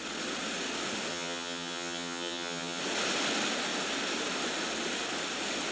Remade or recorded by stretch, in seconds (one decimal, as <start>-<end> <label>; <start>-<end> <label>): 0.0-1.1 recorded; 1.1-2.8 remade; 2.8-5.7 recorded